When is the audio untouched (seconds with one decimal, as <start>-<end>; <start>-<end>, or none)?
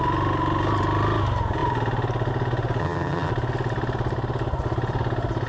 0.0-2.8; 3.3-5.5